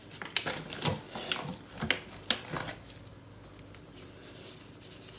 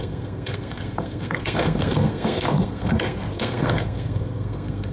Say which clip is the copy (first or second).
second